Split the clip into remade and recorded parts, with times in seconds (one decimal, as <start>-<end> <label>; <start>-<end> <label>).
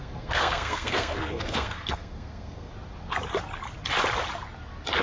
0.0-2.7 remade; 2.7-5.0 recorded